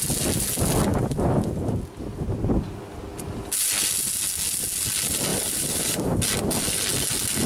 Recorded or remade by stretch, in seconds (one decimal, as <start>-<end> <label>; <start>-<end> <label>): 0.0-0.9 recorded; 0.9-1.7 remade; 1.7-5.3 recorded; 5.3-6.2 remade; 6.2-7.5 recorded